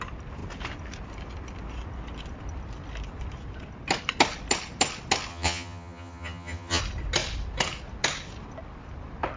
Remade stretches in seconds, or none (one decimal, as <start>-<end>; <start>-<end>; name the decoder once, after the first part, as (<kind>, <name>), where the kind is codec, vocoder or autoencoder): 5.3-6.8 (vocoder, HiFi-GAN)